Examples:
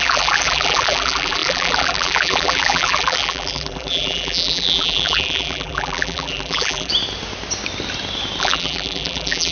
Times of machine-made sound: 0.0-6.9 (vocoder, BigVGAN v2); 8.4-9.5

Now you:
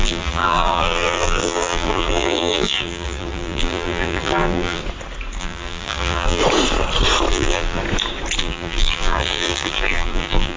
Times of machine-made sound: 0.0-4.8 (vocoder, BigVGAN v2); 5.4-6.4; 7.3-7.8; 8.4-10.6

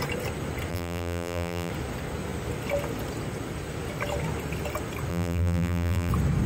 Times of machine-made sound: 0.7-1.7 (vocoder, BigVGAN v2); 5.1-6.1

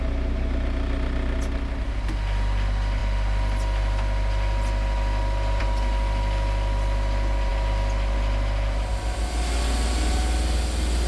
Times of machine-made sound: none

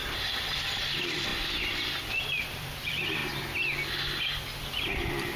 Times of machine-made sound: 0.0-1.3 (vocoder, BigVGAN v2); 2.1-3.2; 4.6-5.4

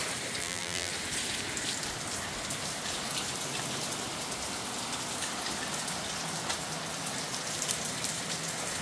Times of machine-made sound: 0.4-0.9 (vocoder, BigVGAN v2)

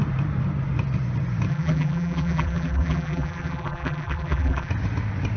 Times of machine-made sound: 1.5-4.7 (vocoder, BigVGAN v2)

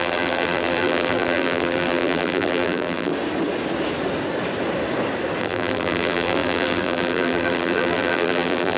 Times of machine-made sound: 0.0-3.1 (vocoder, BigVGAN v2); 5.4-8.8